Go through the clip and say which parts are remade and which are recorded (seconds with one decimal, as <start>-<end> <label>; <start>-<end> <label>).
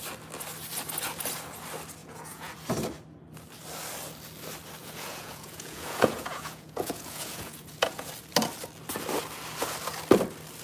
0.0-2.0 recorded; 2.0-2.5 remade; 2.5-4.8 recorded; 4.8-8.1 remade; 8.1-10.6 recorded